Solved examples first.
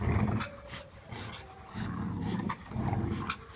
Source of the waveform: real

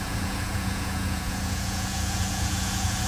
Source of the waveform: fake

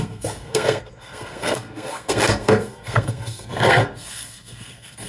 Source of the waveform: fake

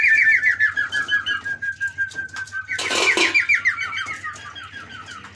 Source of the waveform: real